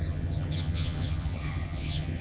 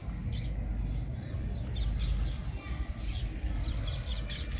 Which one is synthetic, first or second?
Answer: first